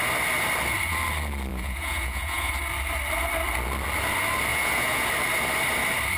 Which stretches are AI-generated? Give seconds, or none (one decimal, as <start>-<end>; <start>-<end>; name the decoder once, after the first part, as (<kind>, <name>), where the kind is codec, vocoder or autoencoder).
1.5-2.5 (vocoder, Vocos); 4.5-5.1